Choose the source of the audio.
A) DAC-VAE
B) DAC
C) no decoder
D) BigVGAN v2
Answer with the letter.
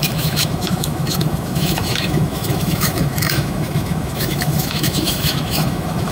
A